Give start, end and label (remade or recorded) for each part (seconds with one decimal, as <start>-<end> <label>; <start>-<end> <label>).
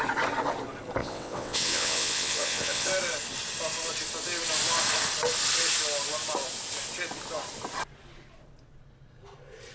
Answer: 0.0-1.0 recorded; 1.0-2.9 remade; 2.9-9.7 recorded